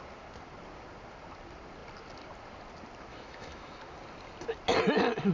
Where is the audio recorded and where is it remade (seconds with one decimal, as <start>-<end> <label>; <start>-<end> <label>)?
0.0-3.1 recorded; 3.1-3.8 remade; 3.8-5.3 recorded